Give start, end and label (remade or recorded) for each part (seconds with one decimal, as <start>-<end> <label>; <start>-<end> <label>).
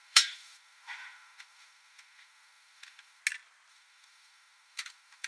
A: 0.0-3.2 remade; 3.2-3.7 recorded; 3.7-5.3 remade